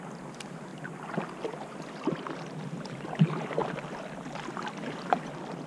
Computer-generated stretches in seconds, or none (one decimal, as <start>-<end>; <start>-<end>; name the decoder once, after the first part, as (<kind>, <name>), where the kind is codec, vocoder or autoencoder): none